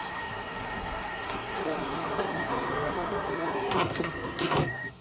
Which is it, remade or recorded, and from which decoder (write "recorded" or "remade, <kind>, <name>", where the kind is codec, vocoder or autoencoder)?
remade, codec, SNAC